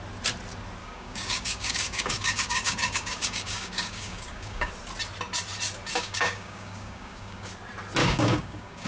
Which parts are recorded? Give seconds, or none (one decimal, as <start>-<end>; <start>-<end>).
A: 0.0-0.8; 4.7-5.9; 7.5-8.0

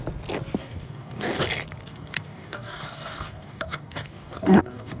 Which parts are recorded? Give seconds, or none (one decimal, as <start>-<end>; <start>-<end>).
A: 0.0-0.6; 1.4-1.9

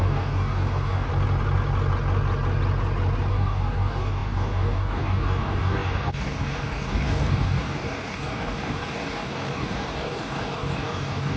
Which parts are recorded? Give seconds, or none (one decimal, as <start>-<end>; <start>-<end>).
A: 1.1-3.3

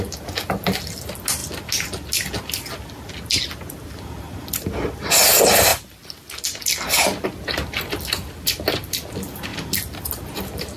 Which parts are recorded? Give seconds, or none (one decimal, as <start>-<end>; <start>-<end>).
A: 0.0-10.8

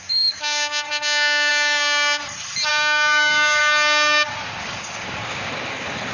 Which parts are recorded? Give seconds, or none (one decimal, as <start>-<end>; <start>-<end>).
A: 1.5-2.7; 3.6-4.6

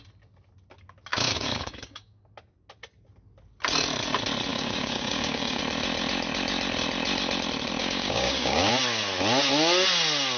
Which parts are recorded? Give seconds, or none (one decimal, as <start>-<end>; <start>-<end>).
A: 0.0-1.1; 2.2-4.5; 5.6-7.8; 8.7-10.4

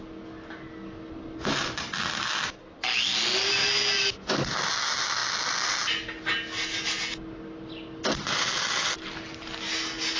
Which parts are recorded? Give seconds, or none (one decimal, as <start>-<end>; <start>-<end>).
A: 0.0-10.2

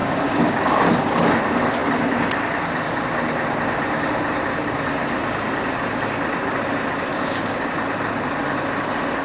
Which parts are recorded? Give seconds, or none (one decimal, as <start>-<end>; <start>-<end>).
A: 0.7-7.1; 7.7-9.2